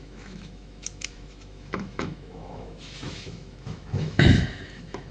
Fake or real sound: fake